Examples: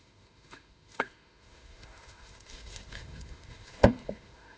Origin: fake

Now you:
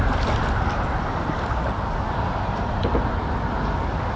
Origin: real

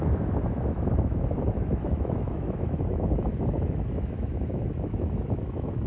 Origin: fake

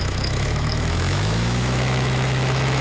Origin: fake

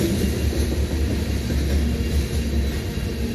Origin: real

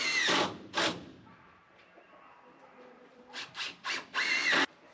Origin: real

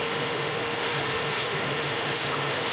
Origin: fake